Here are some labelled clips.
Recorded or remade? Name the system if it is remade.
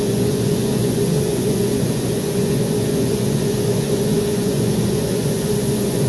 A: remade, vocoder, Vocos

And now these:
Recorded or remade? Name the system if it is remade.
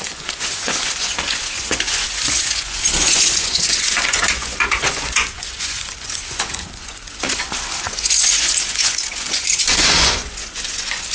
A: remade, vocoder, Vocos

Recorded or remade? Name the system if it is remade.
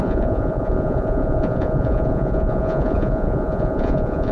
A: remade, vocoder, Vocos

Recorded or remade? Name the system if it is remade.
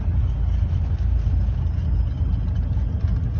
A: recorded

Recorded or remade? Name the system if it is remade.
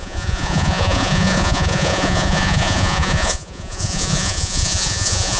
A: remade, vocoder, Vocos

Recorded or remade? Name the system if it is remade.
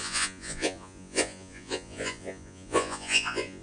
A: remade, vocoder, Vocos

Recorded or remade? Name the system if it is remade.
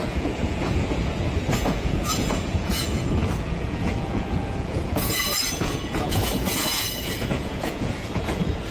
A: remade, vocoder, Vocos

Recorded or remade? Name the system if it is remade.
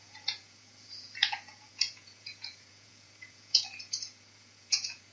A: remade, vocoder, Vocos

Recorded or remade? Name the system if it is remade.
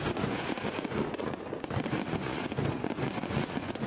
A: remade, vocoder, Vocos